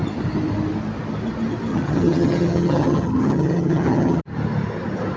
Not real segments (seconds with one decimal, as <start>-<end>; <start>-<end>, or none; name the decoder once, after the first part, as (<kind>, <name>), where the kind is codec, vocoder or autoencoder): 1.7-4.2 (vocoder, HiFi-GAN)